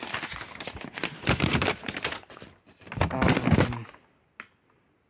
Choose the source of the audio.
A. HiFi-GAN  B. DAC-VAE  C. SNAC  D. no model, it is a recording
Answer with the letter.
D